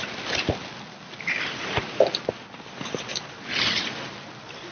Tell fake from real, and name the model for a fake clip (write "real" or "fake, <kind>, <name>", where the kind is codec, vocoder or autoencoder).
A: real